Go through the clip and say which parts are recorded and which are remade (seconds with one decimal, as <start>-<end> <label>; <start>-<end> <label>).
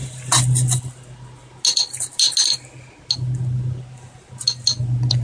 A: 0.0-5.2 recorded